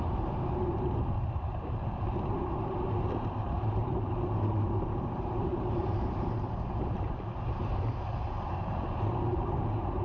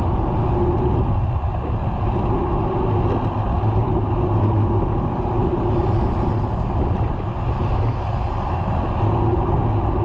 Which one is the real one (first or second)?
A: second